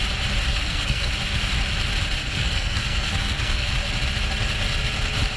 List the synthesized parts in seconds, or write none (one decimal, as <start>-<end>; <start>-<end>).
0.5-1.1; 2.2-3.7